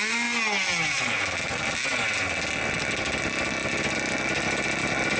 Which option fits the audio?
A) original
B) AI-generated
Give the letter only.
A